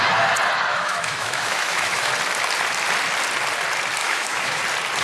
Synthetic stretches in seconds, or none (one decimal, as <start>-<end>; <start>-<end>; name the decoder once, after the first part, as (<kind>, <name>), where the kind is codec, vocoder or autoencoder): 0.7-2.1 (autoencoder, DAC-VAE); 4.0-4.6